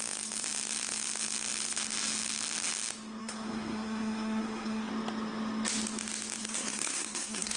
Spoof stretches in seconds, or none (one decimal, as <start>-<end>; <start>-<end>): 3.2-4.9; 6.4-7.6